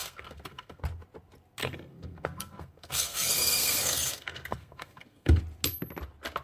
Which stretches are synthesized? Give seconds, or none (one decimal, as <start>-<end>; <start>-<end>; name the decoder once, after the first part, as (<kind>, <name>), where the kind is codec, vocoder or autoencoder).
0.0-0.8 (codec, SNAC); 1.6-5.4